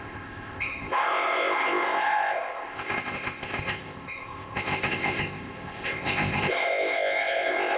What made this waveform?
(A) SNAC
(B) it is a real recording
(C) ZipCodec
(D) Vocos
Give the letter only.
C